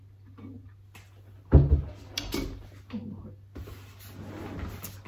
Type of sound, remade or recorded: recorded